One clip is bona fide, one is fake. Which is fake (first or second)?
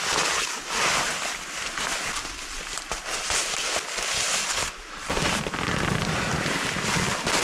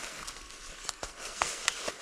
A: second